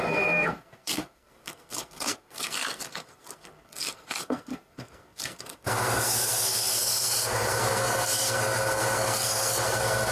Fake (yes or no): yes